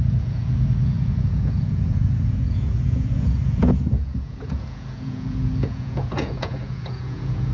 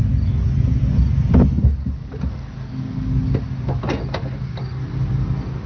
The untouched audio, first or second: second